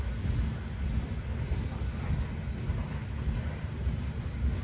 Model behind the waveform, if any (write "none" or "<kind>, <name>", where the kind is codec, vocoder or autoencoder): none